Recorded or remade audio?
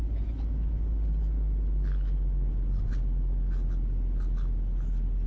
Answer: recorded